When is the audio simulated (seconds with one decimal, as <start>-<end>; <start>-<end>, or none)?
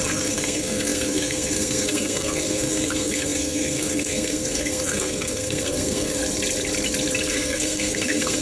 0.0-6.2; 7.3-8.4